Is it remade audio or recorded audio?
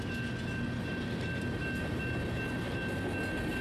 recorded